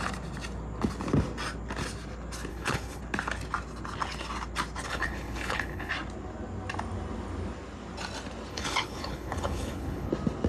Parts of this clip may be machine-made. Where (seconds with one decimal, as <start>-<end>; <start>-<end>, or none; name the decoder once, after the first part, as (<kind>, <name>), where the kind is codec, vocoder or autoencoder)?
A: 2.5-3.0 (codec, HILCodec); 4.9-5.9; 8.5-10.1